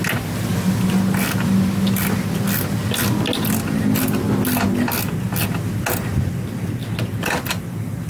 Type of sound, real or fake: real